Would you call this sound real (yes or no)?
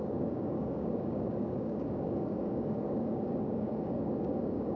no